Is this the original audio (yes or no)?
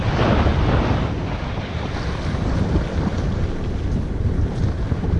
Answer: yes